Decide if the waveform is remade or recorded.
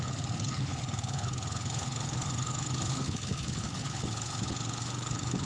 remade